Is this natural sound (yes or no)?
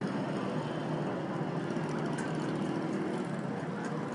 yes